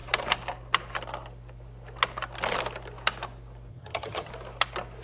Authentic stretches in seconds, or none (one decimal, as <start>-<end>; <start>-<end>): 0.0-3.7; 4.3-5.0